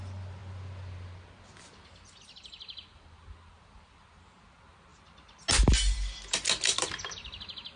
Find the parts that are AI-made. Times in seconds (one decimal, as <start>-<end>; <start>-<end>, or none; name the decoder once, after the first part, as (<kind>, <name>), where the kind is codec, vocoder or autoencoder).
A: none